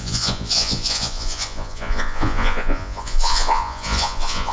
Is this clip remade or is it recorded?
remade